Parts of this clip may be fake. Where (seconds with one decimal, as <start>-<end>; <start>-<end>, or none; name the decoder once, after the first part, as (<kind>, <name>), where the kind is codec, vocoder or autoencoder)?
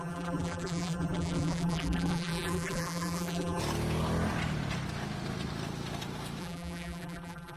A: 0.0-3.6 (vocoder, BigVGAN v2); 6.4-7.6